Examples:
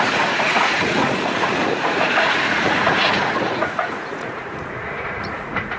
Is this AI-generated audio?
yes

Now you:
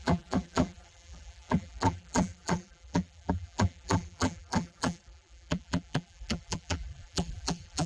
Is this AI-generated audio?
yes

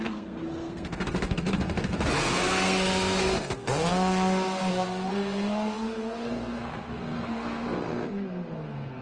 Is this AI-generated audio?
yes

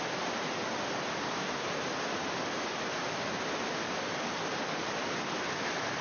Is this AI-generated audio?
no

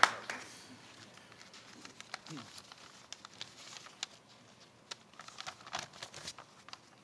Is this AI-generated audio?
no